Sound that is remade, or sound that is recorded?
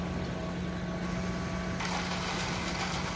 recorded